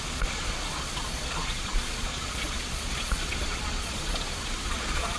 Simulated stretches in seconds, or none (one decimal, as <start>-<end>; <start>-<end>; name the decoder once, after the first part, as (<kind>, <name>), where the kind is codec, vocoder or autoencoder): 0.0-5.2 (vocoder, Vocos)